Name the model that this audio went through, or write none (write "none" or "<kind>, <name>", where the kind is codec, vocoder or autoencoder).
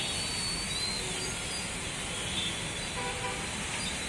none